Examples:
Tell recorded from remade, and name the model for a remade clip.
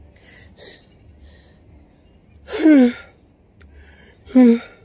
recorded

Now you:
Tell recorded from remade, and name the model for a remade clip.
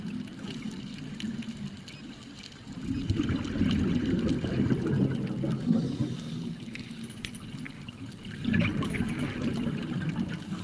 recorded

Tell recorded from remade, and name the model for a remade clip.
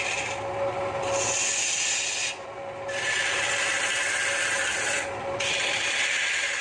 recorded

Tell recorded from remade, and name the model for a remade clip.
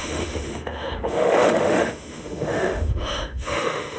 remade, autoencoder, DAC-VAE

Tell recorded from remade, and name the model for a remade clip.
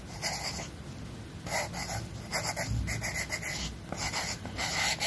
recorded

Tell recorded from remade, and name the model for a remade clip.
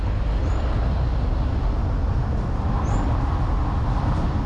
recorded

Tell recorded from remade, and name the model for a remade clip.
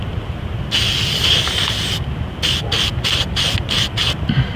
recorded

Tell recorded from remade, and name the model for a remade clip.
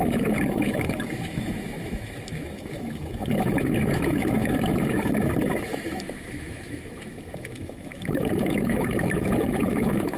remade, autoencoder, DAC-VAE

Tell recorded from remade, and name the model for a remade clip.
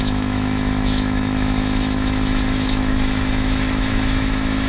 remade, autoencoder, DAC-VAE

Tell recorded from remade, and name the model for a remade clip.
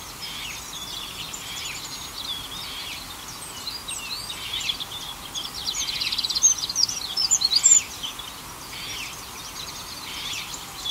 recorded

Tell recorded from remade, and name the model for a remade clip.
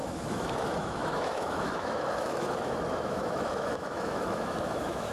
remade, autoencoder, DAC-VAE